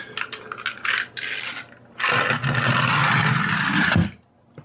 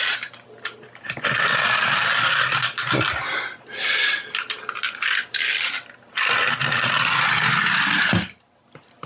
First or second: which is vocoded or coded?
second